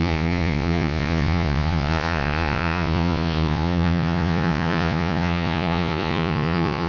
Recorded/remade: remade